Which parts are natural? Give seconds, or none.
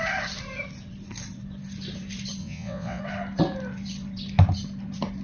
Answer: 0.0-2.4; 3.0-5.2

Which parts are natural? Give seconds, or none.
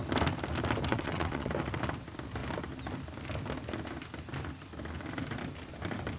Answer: 0.0-0.9; 1.5-6.2